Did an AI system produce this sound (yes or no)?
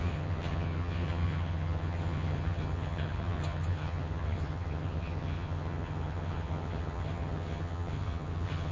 yes